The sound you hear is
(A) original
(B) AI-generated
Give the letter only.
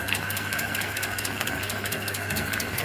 B